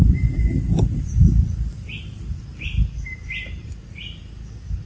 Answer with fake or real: real